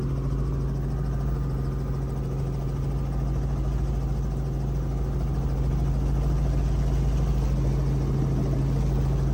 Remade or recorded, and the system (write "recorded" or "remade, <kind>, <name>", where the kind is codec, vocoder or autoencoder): recorded